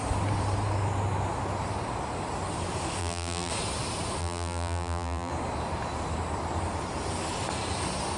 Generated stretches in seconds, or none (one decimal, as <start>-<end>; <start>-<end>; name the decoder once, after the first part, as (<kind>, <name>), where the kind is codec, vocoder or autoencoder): 3.0-3.5 (vocoder, BigVGAN v2); 4.2-5.3